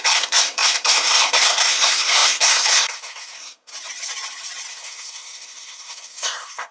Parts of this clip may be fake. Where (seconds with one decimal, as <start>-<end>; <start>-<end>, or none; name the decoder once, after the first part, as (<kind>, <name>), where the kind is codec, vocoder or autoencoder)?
0.0-3.7 (codec, SNAC); 4.7-6.7